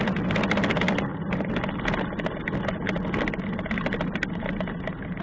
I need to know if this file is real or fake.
real